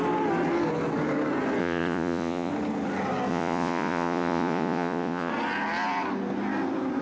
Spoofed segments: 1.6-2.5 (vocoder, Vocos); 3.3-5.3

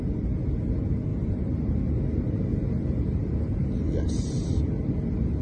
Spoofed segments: 1.1-1.8 (vocoder, BigVGAN v2)

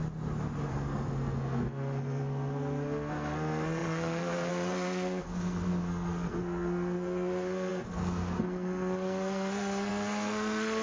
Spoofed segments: 0.7-10.8 (codec, SNAC)

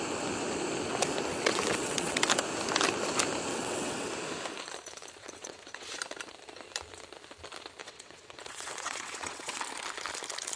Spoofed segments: 1.3-2.2 (vocoder, WaveNeXt); 3.5-4.1; 5.2-5.9; 7.8-9.6

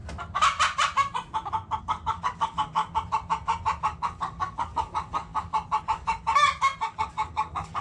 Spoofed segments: 1.8-2.8 (codec, DAC); 3.8-5.3; 5.8-6.4; 6.9-7.8

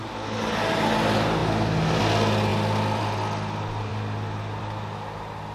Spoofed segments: none